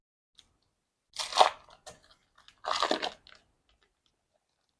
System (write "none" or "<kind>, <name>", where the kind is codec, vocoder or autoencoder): none